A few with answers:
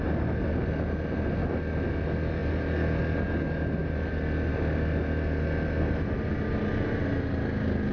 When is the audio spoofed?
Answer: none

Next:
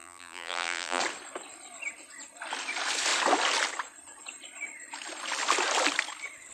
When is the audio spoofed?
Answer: 0.0-1.0

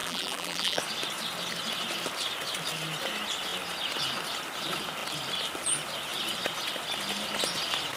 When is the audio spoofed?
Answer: 0.0-0.8

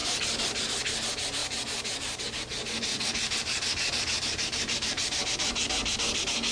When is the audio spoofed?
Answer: 0.0-0.6; 1.4-2.2; 2.9-5.2

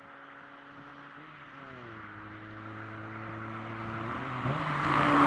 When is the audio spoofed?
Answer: none

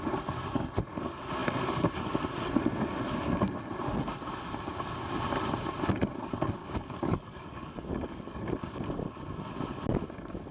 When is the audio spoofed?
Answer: 6.6-8.8

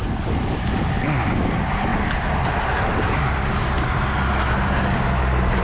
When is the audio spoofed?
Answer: none

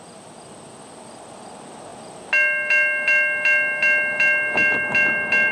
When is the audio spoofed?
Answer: none